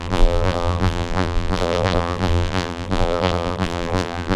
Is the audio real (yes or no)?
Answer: no